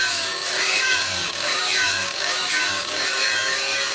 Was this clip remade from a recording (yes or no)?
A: yes